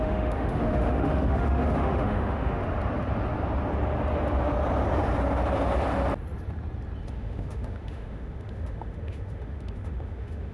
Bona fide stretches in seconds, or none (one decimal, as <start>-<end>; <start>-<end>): 2.6-7.1